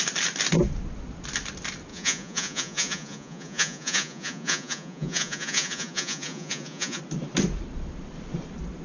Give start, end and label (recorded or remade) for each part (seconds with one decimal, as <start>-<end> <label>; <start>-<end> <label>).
0.0-1.9 recorded; 1.9-7.0 remade; 7.0-8.8 recorded